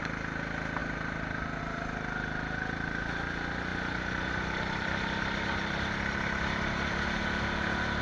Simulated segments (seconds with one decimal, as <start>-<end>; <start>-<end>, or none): none